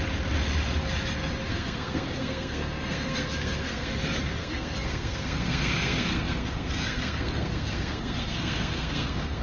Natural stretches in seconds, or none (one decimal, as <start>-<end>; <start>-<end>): 0.0-1.5; 3.9-4.4